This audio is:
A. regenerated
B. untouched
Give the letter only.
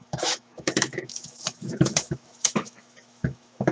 A